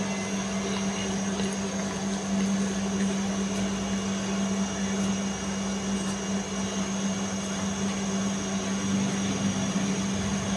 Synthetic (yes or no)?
no